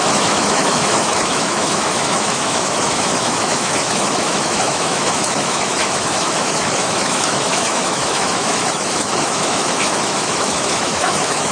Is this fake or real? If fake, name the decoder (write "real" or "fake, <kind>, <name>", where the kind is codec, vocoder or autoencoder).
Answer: fake, autoencoder, DAC-VAE